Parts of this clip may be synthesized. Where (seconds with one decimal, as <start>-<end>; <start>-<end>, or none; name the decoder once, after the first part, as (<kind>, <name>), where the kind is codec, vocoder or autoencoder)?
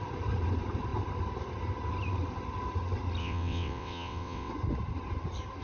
3.2-4.5 (vocoder, WaveNeXt)